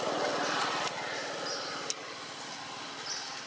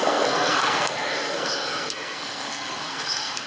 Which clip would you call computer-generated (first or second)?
second